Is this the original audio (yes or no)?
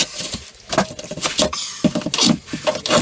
yes